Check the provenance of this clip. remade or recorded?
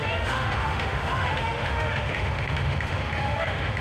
remade